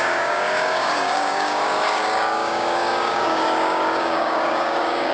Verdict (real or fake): fake